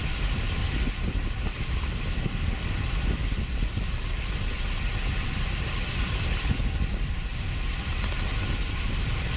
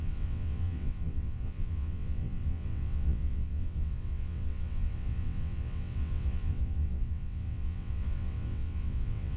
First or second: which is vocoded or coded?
second